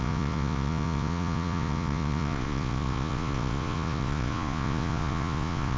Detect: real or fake fake